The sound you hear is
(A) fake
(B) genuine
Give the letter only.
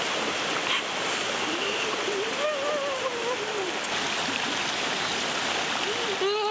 B